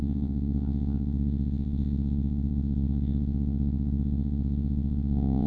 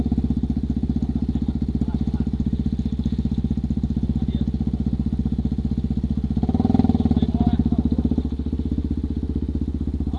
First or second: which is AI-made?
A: first